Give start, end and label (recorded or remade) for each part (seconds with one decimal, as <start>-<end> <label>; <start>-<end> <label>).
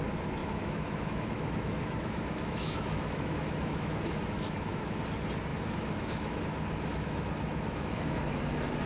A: 0.0-0.4 recorded; 0.4-5.0 remade; 5.0-5.5 recorded; 5.5-6.4 remade; 6.4-6.9 recorded; 6.9-8.2 remade; 8.2-8.9 recorded